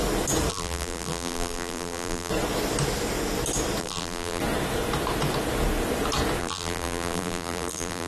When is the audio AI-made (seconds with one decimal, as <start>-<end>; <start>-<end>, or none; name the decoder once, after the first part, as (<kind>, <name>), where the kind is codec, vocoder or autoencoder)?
0.5-2.3 (vocoder, BigVGAN v2); 3.8-4.4; 6.4-8.1